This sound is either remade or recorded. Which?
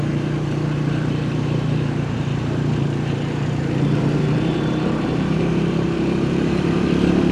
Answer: remade